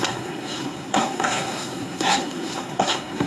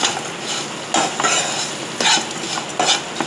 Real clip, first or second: second